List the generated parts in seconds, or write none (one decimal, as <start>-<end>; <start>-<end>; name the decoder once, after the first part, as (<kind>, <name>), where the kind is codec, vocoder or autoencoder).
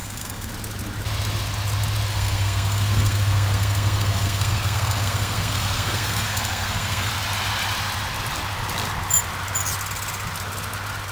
0.0-0.5 (codec, SNAC); 2.1-7.1